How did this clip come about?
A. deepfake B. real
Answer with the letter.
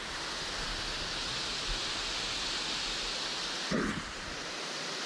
B